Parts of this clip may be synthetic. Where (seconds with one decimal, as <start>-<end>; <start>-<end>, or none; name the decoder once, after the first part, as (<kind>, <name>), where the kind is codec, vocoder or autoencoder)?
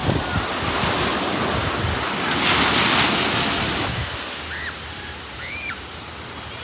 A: none